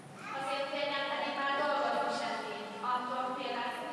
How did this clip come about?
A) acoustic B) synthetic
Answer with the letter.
A